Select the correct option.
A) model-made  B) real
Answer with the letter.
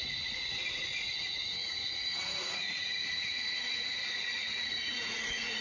A